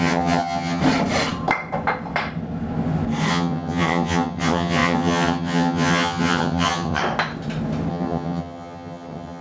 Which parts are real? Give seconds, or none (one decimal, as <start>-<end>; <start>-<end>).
0.8-3.3; 7.0-7.9